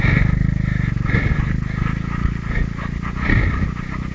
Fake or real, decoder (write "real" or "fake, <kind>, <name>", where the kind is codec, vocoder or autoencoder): real